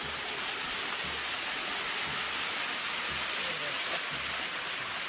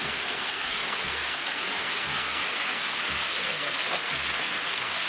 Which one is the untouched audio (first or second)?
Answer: first